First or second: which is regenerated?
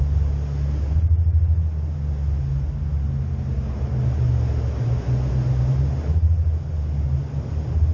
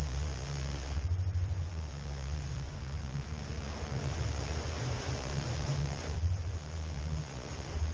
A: second